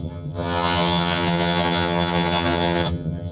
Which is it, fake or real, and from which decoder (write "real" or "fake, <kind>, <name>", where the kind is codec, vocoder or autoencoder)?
fake, vocoder, HiFi-GAN